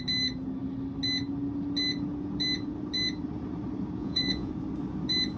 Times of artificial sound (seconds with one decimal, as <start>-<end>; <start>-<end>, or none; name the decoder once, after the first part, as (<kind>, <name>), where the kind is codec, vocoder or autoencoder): 4.0-4.5 (vocoder, Vocos)